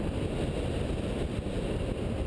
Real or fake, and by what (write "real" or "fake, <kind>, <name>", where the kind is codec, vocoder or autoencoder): real